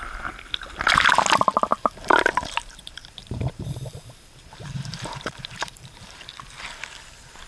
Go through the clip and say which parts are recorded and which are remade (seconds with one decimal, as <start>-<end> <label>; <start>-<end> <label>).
0.0-1.7 recorded; 1.7-6.2 remade; 6.2-7.5 recorded